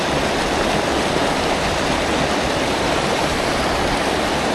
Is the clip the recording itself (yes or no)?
yes